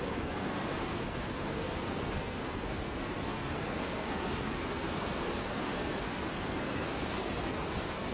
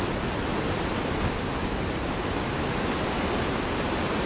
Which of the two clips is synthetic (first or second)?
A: first